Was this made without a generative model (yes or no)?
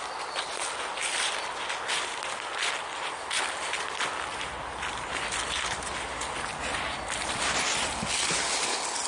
yes